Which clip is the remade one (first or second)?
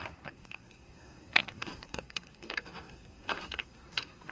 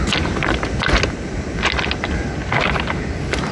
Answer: first